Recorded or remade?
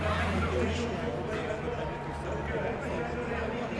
recorded